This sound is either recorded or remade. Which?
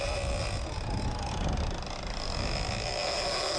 recorded